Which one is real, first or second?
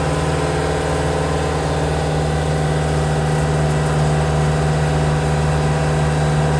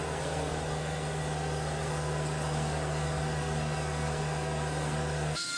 first